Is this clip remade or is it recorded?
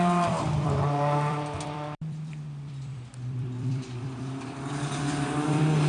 remade